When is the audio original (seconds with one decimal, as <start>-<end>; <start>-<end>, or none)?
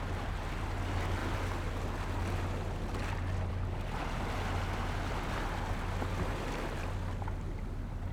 0.0-8.1